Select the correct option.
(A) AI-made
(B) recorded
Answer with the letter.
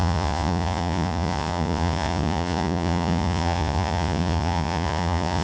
A